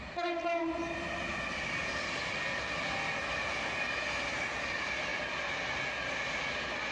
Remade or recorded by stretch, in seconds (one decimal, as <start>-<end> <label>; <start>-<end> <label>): 0.0-6.9 recorded